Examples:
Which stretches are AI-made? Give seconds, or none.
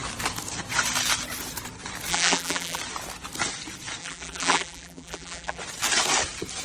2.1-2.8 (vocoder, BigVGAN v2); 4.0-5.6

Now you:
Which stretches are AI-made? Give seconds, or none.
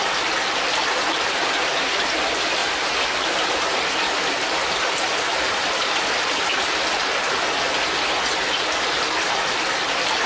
2.6-7.9 (vocoder, BigVGAN v2)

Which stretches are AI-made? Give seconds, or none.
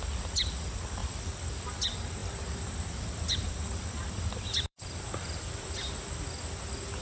1.0-1.8 (vocoder, BigVGAN v2); 2.2-5.9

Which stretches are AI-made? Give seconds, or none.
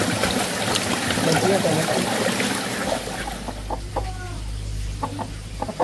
none